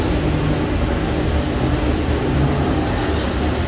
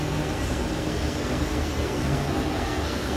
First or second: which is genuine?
first